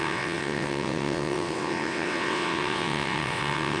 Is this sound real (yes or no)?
no